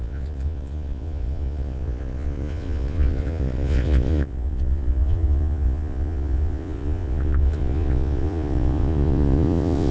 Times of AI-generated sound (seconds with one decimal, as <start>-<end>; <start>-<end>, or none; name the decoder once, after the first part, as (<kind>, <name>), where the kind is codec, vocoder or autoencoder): 0.0-9.9 (vocoder, Vocos)